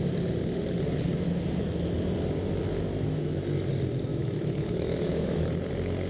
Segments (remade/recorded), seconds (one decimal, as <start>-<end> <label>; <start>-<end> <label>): 0.0-4.1 recorded; 4.1-5.5 remade; 5.5-6.1 recorded